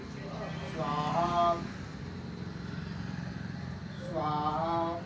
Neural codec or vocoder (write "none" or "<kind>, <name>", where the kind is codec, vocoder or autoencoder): none